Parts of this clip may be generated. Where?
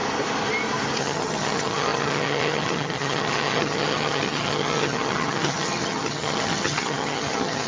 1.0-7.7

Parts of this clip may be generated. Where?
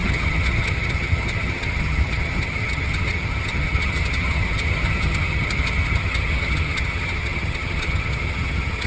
0.0-8.9